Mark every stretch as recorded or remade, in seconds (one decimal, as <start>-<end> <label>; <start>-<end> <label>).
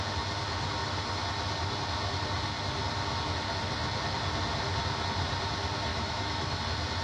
0.0-5.9 recorded; 5.9-6.6 remade; 6.6-7.0 recorded